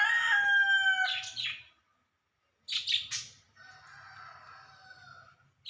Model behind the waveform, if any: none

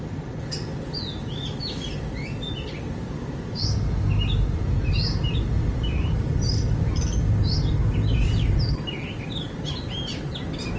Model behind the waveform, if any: none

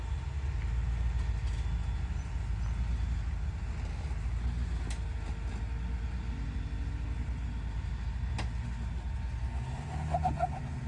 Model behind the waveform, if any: none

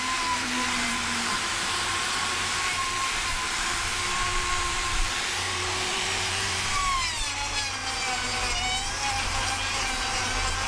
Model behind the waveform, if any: vocoder, BigVGAN v2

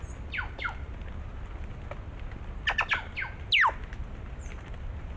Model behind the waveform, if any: none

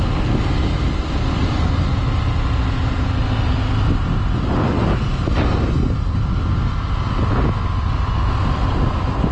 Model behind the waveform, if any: none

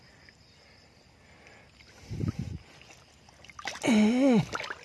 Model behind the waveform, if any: none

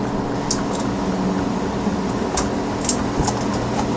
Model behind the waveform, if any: none